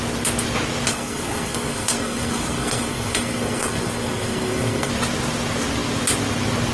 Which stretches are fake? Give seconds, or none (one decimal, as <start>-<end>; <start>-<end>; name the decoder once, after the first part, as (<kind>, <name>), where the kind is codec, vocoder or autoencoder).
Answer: 0.9-4.9 (codec, SNAC)